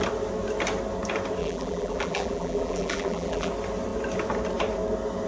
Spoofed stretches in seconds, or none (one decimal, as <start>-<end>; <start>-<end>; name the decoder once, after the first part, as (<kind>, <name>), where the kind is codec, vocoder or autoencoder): 1.4-3.5 (vocoder, BigVGAN v2)